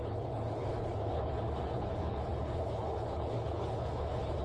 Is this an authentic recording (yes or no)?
no